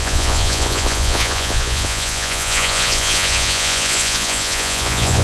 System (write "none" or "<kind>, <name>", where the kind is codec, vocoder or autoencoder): vocoder, Vocos